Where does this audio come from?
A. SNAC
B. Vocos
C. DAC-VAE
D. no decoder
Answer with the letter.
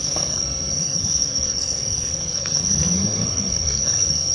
A